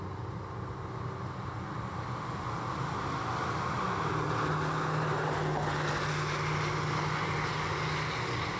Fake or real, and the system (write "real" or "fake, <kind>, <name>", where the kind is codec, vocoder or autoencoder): real